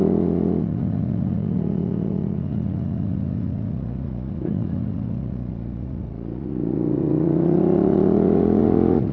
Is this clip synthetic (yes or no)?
yes